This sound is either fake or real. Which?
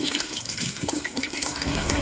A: fake